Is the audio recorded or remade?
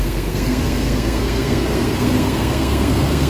remade